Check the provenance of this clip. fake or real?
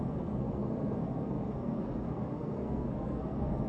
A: fake